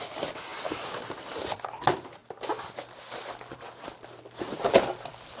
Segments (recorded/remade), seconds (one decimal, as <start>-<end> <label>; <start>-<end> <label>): 0.0-5.4 recorded